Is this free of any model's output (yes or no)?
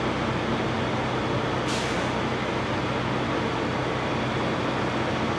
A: yes